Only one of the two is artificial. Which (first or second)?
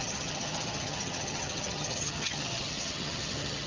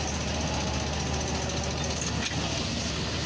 first